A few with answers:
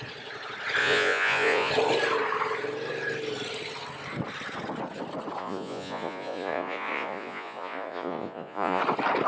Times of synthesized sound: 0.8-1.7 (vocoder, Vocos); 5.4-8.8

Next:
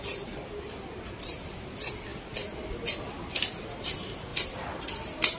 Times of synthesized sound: 4.3-5.4 (vocoder, BigVGAN v2)

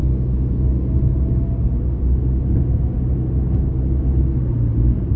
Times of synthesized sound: none

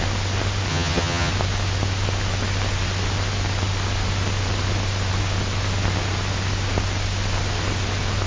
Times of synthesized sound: 0.7-1.3 (vocoder, HiFi-GAN)

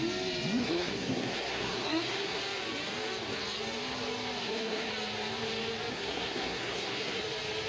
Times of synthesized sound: 0.6-2.4 (codec, SNAC); 4.4-4.9; 5.9-7.2

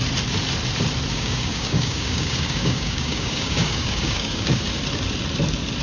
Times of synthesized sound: 1.1-4.6 (codec, DAC)

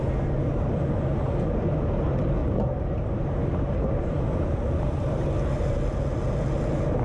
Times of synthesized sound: none